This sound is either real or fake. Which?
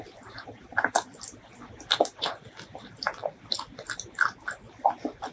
real